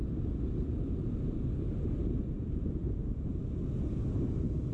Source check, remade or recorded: recorded